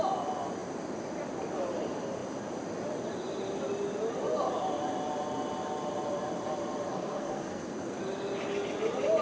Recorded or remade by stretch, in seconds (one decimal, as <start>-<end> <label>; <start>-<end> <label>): 0.0-6.9 recorded; 6.9-8.0 remade; 8.0-9.2 recorded